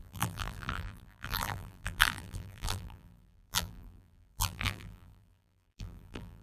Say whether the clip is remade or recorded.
remade